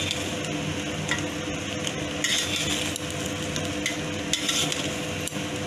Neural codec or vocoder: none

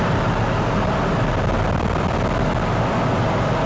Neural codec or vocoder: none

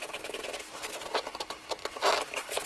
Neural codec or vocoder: none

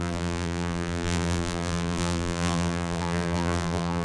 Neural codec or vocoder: vocoder, BigVGAN v2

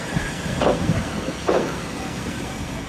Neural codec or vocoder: codec, SNAC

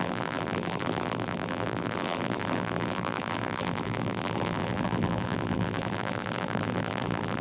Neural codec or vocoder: vocoder, BigVGAN v2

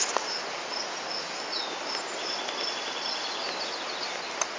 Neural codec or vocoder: none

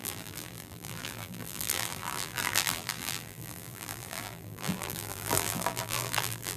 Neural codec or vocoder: vocoder, BigVGAN v2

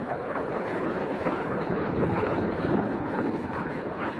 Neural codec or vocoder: codec, HILCodec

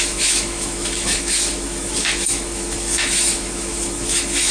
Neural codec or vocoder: autoencoder, DAC-VAE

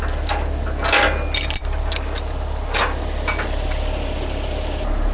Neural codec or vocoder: none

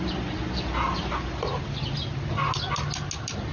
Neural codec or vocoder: none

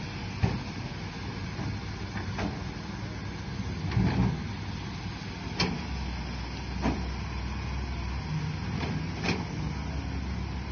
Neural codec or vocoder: none